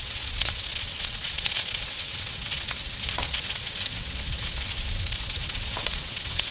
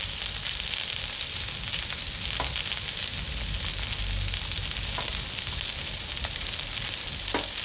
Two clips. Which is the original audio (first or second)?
second